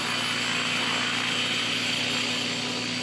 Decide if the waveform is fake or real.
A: real